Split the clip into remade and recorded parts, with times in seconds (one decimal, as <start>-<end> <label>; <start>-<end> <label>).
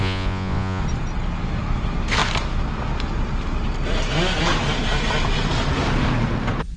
0.0-0.8 remade; 0.8-6.8 recorded